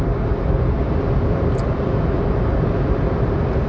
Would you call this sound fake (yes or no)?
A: no